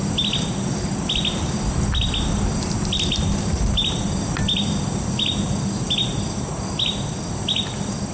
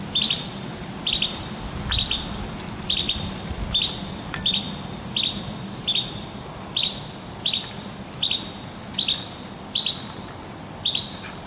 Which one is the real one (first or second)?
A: first